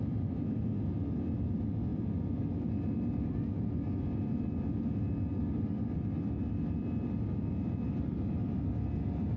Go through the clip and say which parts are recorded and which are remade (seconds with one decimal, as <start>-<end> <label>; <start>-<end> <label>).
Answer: 0.0-9.4 recorded